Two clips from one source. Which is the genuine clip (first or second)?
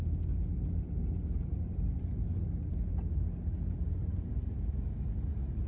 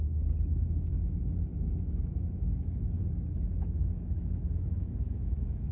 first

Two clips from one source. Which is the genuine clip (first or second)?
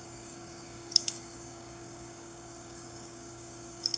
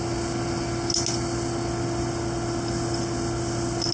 second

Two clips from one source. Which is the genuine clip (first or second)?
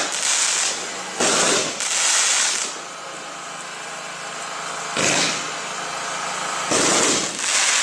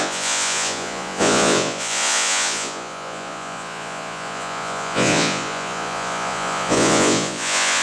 first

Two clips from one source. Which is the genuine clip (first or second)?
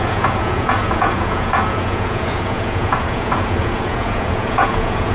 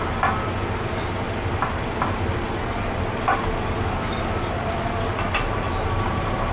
second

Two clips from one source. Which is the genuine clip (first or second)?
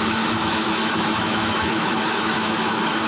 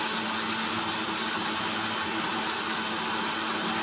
second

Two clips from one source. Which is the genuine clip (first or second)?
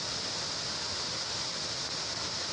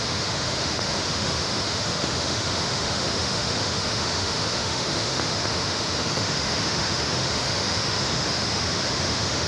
first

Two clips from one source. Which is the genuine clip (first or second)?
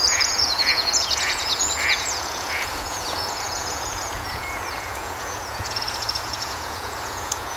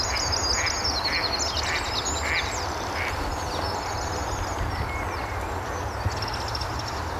second